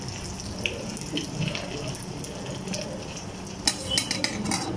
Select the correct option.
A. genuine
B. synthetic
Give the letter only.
A